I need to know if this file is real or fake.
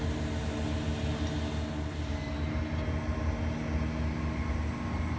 real